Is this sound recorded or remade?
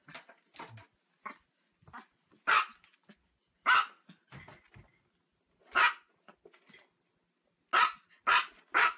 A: recorded